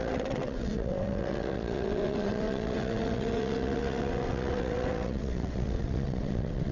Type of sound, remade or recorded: remade